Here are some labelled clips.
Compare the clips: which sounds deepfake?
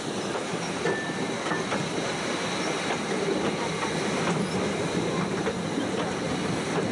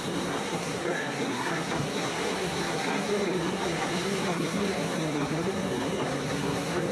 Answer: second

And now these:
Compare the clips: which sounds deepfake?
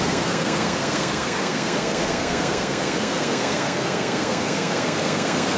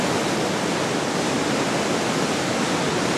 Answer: first